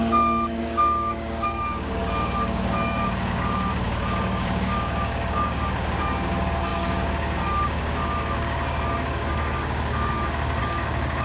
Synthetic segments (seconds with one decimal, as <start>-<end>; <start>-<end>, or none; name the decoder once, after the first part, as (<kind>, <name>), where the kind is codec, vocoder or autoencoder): 0.0-11.2 (codec, DAC)